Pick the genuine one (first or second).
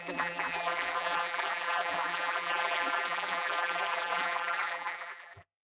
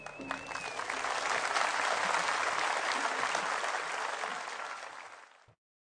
second